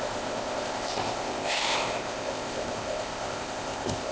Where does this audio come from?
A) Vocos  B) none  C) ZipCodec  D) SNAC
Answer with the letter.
C